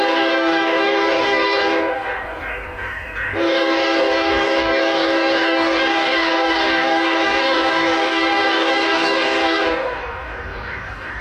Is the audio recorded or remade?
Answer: remade